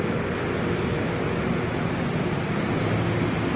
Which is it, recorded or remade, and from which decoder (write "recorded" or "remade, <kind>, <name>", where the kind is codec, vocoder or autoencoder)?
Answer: recorded